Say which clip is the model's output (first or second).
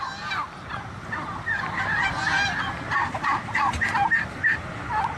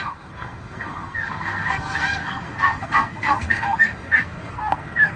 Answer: second